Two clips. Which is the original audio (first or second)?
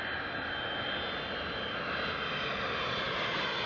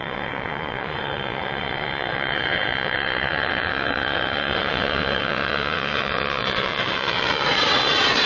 first